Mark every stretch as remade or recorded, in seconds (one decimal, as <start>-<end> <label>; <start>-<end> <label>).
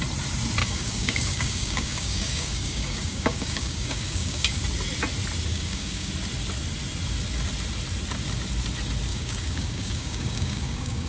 0.0-0.6 recorded; 0.6-4.6 remade; 4.6-5.5 recorded; 5.5-6.1 remade; 6.1-9.1 recorded; 9.1-11.1 remade